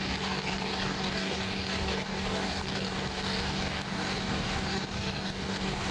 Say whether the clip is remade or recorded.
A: remade